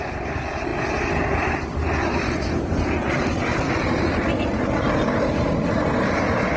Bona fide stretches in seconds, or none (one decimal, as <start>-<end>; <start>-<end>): 0.0-6.6